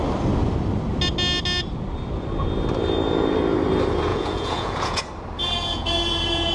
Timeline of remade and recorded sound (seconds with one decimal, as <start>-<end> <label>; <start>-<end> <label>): 0.0-4.1 recorded; 4.1-5.0 remade; 5.0-5.4 recorded; 5.4-6.5 remade